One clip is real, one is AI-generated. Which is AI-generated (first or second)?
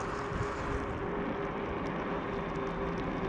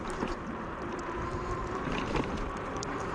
second